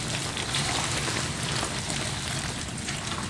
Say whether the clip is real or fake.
real